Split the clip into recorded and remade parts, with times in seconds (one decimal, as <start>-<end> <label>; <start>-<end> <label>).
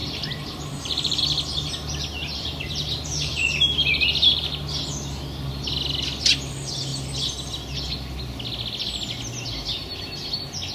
0.0-1.2 remade; 1.2-2.3 recorded; 2.3-3.6 remade; 3.6-10.7 recorded